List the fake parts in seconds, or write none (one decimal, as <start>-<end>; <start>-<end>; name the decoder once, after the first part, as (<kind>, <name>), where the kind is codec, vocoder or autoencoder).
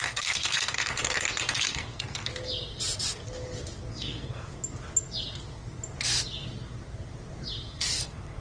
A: 0.0-2.3 (codec, SNAC); 3.9-4.6; 8.0-8.4